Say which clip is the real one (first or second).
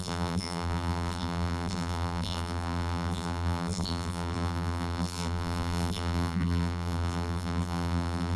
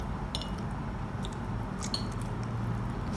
second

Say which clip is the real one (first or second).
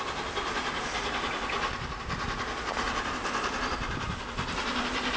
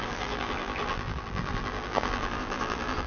first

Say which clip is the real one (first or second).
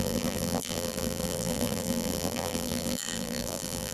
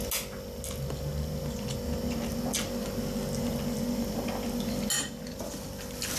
second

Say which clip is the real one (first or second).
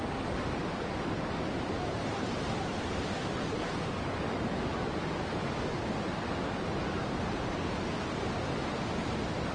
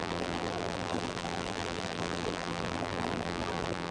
first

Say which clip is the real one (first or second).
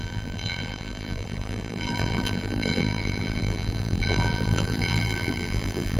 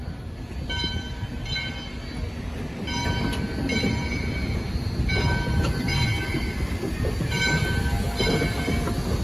second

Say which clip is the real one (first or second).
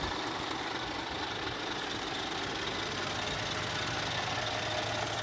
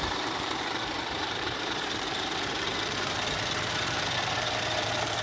first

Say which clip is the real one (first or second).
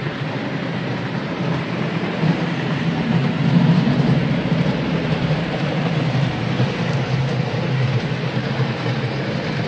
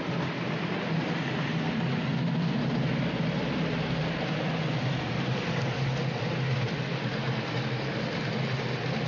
second